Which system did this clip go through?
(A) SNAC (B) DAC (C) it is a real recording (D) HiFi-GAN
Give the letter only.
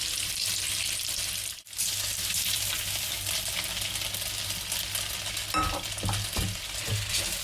C